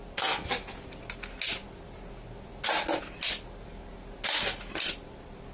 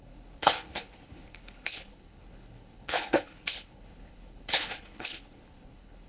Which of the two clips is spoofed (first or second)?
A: second